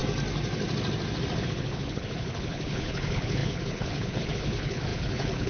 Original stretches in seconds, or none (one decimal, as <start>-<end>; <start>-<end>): 0.0-1.4